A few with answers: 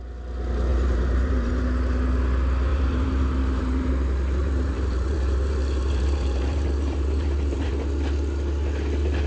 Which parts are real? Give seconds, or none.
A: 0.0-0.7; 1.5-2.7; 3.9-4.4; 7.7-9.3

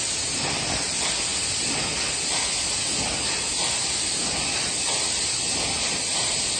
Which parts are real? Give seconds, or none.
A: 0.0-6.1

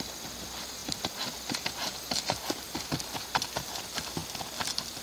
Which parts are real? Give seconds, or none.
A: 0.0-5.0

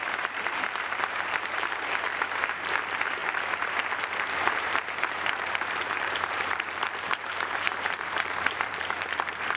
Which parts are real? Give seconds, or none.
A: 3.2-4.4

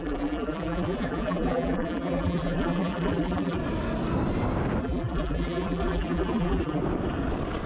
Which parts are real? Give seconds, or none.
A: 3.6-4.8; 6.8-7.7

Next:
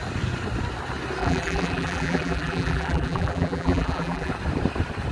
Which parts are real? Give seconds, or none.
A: 0.0-1.2; 4.3-5.1

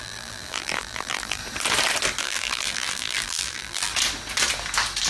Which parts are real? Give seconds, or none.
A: 1.4-2.2; 3.9-5.1

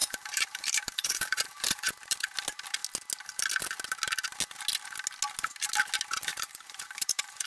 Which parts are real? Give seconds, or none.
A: 1.9-6.3